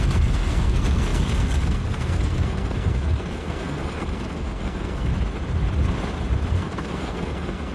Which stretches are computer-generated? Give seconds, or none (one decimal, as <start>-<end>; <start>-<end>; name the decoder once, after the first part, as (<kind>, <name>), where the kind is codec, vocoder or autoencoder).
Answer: 0.0-5.1 (codec, SNAC); 6.5-7.7